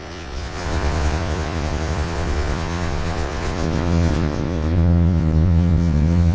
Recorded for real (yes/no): no